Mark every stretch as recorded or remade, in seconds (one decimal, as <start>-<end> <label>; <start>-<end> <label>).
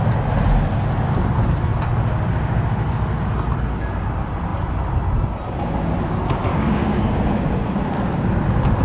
0.0-6.5 recorded; 6.5-7.2 remade; 7.2-8.8 recorded